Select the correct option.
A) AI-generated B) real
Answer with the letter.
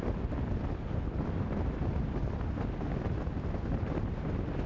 B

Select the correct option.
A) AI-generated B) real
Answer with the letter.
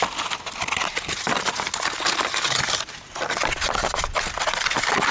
B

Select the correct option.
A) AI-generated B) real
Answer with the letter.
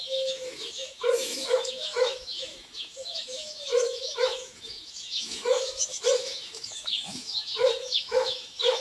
A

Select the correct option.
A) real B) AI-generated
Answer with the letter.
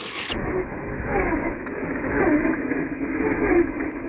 B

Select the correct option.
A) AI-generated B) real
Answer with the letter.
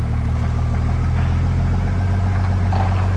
B